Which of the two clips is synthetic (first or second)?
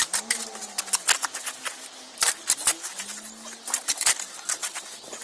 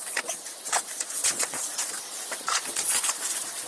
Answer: second